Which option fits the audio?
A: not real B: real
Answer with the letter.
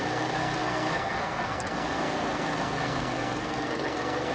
A